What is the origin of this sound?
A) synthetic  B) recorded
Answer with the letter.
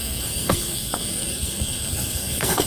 A